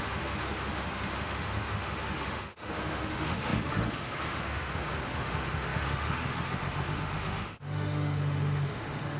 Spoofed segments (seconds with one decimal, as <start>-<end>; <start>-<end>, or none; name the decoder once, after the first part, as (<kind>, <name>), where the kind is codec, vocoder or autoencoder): 0.0-9.2 (autoencoder, DAC-VAE)